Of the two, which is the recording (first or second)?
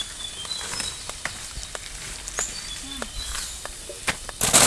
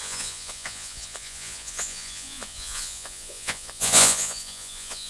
first